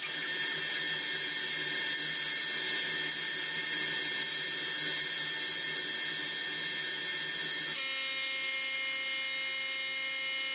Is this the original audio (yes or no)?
yes